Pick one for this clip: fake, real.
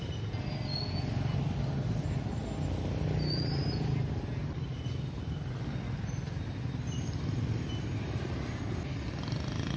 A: real